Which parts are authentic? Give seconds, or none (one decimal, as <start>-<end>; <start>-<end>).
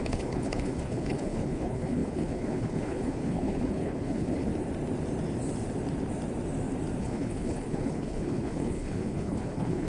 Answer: 4.5-7.0